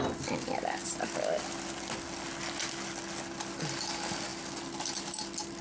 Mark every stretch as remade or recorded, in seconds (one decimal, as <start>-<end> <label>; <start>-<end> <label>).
0.0-5.6 recorded